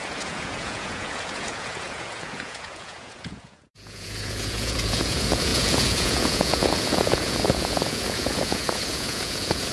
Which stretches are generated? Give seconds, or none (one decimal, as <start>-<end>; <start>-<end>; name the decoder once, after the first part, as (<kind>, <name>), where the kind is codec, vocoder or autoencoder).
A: 0.0-9.7 (vocoder, Vocos)